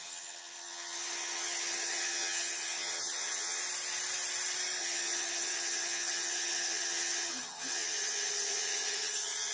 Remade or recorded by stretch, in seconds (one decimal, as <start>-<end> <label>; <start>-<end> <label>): 0.0-3.6 remade; 3.6-4.8 recorded; 4.8-9.5 remade